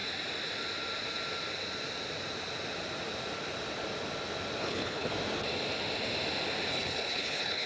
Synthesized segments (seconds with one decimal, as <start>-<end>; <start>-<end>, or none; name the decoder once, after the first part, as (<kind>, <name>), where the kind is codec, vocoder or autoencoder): 4.6-5.1 (codec, HILCodec); 6.7-7.7